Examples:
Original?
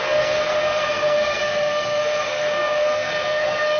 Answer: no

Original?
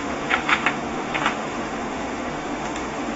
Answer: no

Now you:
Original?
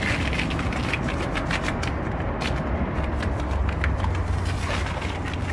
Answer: yes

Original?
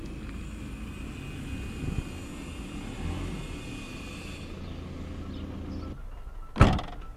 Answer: yes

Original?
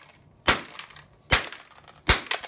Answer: yes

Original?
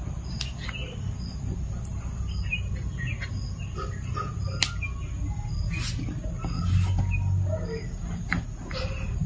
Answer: yes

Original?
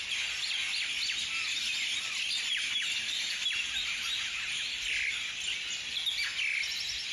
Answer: yes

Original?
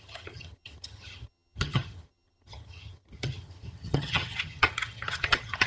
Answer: no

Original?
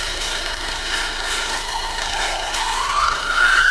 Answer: no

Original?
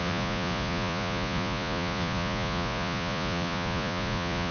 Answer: no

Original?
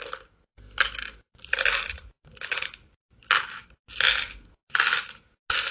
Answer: yes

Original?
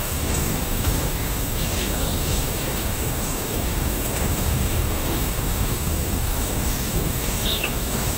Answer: no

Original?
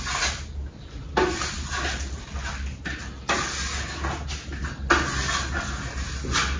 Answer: yes